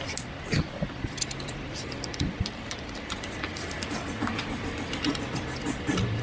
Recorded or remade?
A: recorded